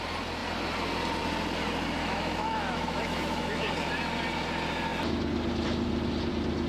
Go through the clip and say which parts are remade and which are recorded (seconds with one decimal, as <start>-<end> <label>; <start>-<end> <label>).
0.0-2.0 recorded; 2.0-3.7 remade; 3.7-6.7 recorded